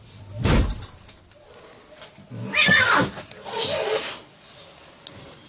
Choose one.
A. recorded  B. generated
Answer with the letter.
A